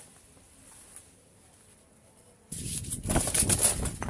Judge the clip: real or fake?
real